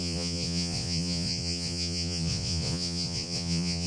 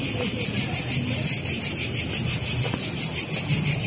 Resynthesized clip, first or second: first